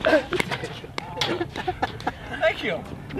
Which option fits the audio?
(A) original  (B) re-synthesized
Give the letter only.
A